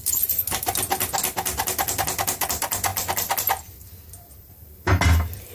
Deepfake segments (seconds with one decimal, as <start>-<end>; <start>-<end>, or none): none